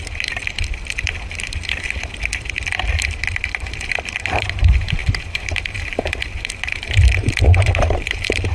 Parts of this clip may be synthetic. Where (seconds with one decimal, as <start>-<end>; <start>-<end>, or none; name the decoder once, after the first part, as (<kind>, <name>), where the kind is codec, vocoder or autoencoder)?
0.0-0.4 (vocoder, BigVGAN v2); 4.4-8.5